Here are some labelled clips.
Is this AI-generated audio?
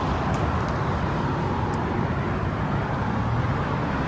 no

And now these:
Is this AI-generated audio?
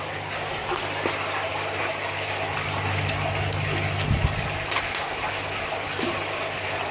no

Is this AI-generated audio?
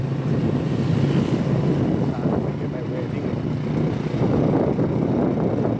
no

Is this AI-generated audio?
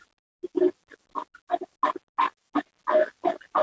no